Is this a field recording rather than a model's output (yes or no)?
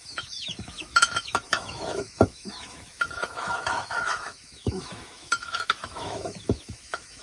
no